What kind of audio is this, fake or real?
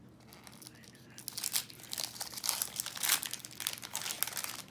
real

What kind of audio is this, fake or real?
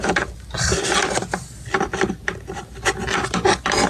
real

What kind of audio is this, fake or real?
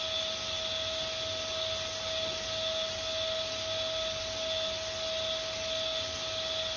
real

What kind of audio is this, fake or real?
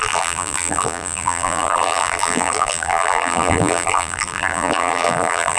fake